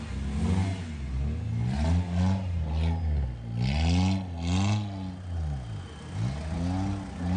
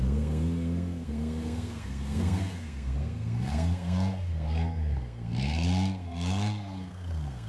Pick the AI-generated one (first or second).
second